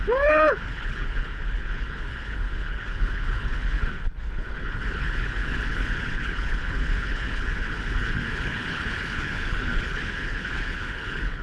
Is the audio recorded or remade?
remade